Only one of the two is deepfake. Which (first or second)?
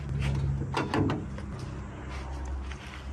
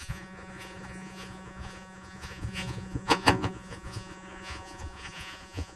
second